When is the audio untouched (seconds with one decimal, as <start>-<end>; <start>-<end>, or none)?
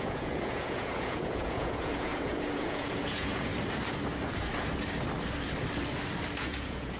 3.5-6.4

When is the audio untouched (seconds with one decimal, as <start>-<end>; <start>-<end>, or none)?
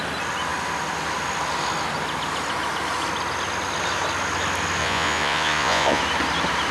0.0-4.8; 6.0-6.7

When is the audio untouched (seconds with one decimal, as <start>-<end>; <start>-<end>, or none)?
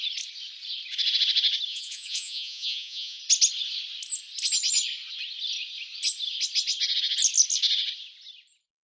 0.0-1.7; 3.2-8.8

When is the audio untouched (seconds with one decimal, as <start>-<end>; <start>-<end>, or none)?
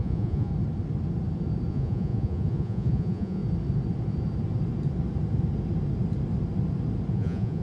0.5-1.7; 3.4-7.1